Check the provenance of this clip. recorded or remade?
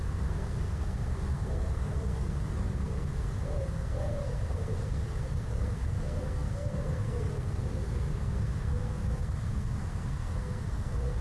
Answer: remade